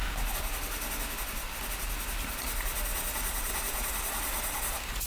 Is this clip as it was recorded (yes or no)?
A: yes